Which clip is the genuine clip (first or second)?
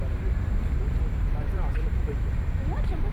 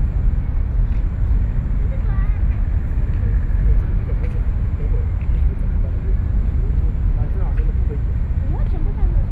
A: second